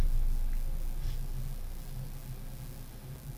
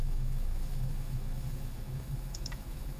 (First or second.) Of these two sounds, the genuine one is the first